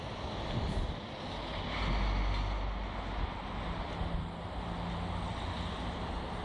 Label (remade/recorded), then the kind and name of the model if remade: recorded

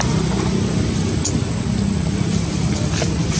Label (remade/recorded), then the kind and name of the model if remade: recorded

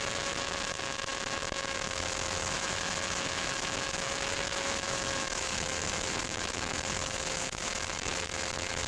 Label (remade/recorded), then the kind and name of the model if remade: remade, autoencoder, DAC-VAE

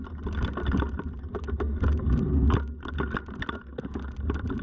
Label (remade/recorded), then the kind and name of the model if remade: recorded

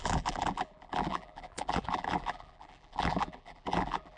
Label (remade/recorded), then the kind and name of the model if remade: remade, vocoder, BigVGAN v2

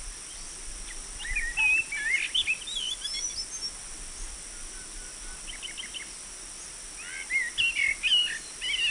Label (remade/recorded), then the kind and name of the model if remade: recorded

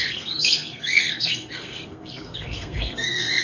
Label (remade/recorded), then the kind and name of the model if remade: remade, codec, SNAC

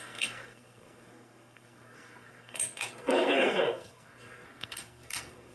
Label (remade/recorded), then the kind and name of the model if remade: remade, codec, SNAC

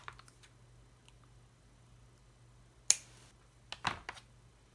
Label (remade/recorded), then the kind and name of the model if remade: recorded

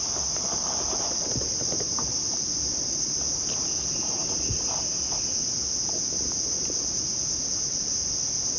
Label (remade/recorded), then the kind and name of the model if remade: recorded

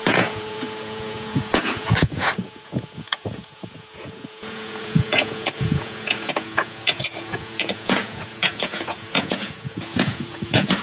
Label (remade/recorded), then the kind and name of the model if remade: remade, vocoder, Vocos